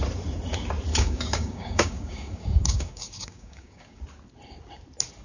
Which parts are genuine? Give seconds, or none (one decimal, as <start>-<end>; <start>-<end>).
0.0-0.9; 4.0-5.2